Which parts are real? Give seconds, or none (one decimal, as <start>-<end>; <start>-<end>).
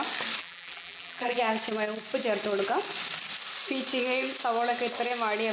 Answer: 0.0-0.4; 1.4-5.5